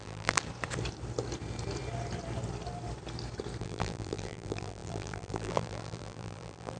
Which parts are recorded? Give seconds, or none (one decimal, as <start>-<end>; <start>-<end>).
0.4-3.6